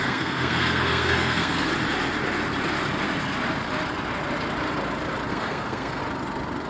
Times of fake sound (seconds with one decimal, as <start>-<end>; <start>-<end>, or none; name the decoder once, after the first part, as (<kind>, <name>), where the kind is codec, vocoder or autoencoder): 0.0-1.7 (codec, SNAC); 5.3-6.0